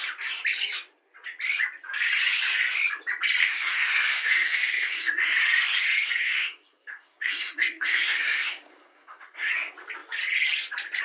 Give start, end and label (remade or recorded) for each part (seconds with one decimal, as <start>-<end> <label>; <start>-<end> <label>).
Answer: 0.0-3.4 recorded; 3.4-5.4 remade; 5.4-6.2 recorded; 6.2-9.5 remade; 9.5-11.0 recorded